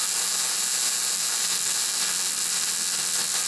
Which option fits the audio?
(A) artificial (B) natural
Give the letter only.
B